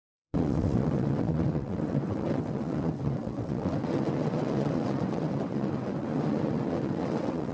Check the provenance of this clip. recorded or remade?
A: remade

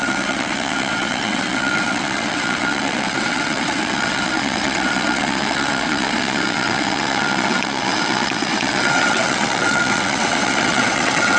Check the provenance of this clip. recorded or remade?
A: remade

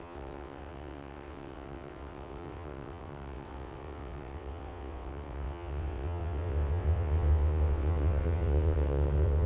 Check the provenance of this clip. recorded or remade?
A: remade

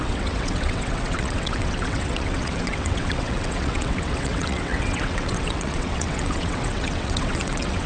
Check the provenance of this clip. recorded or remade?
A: remade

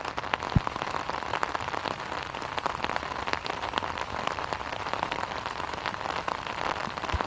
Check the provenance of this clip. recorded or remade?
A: recorded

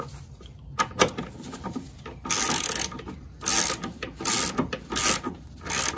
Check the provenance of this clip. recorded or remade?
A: recorded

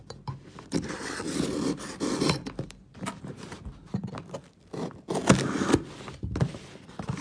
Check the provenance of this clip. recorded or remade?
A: recorded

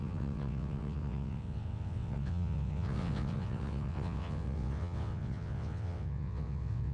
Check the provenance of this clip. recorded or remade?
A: remade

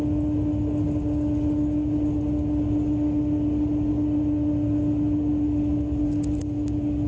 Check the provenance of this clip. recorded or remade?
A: recorded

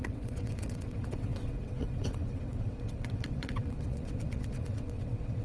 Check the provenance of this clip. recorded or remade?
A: remade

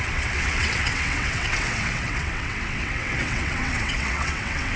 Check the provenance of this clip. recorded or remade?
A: remade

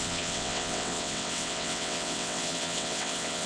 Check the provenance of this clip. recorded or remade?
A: remade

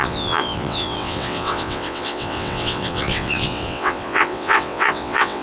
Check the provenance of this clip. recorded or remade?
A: remade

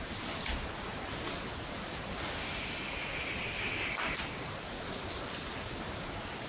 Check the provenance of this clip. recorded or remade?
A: recorded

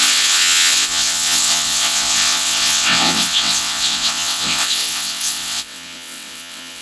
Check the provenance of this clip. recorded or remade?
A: remade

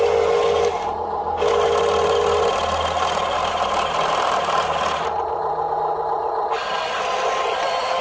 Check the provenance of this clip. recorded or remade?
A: recorded